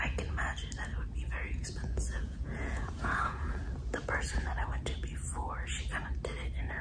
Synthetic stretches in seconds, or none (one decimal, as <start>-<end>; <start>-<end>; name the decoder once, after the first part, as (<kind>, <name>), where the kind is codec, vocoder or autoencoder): 1.3-3.6 (vocoder, Vocos)